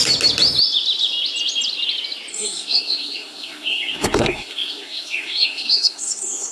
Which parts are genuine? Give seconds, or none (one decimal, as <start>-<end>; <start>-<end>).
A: 0.0-2.3